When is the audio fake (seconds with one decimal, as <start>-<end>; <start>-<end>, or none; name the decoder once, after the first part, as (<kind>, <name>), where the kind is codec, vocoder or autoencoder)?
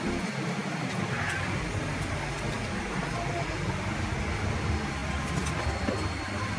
none